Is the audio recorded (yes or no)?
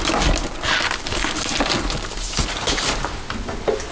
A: yes